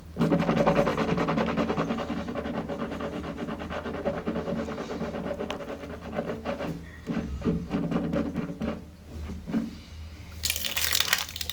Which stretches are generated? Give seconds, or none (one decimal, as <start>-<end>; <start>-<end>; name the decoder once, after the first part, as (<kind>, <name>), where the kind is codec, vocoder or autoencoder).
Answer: none